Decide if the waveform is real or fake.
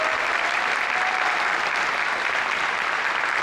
real